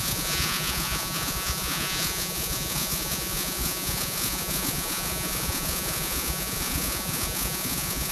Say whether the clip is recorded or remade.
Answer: remade